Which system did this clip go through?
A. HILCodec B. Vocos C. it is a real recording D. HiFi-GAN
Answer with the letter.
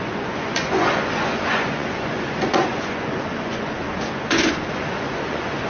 B